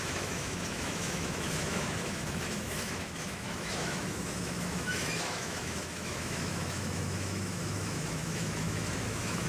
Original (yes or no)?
no